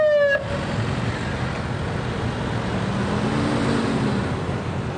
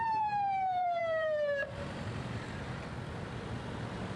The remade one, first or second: second